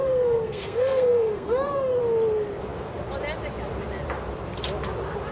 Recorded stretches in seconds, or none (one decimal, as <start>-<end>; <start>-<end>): 2.0-5.3